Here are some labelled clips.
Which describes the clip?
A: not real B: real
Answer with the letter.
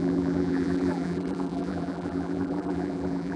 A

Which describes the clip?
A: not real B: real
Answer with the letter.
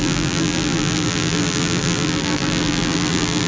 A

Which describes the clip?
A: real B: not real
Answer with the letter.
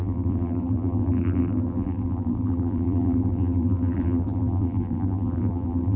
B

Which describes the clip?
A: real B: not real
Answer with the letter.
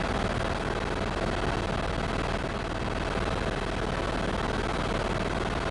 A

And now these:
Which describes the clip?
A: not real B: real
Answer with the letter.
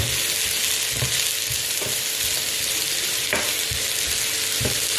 B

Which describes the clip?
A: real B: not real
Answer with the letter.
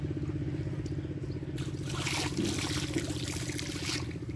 A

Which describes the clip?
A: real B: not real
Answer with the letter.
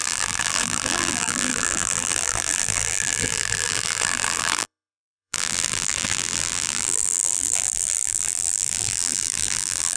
B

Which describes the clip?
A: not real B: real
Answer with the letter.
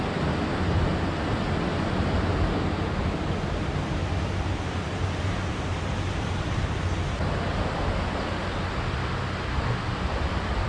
B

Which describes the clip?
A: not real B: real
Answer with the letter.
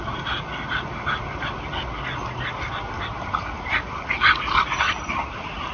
B